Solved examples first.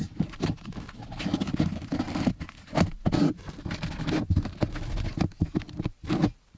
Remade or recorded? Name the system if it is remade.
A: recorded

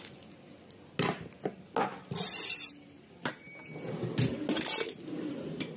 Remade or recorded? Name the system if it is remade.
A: recorded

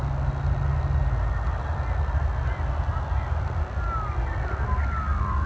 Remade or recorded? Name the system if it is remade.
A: recorded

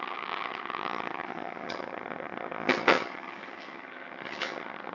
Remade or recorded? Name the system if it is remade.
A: remade, vocoder, HiFi-GAN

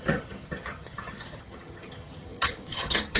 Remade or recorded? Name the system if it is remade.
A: remade, vocoder, HiFi-GAN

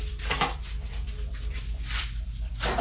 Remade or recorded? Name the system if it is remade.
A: recorded